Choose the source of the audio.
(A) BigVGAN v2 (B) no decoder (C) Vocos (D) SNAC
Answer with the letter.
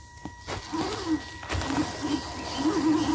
B